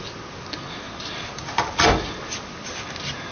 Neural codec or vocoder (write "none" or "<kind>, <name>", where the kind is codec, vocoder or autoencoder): none